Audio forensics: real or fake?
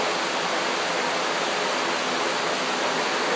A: real